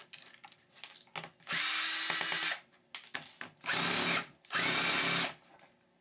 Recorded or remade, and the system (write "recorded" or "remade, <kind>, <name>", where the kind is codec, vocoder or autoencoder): recorded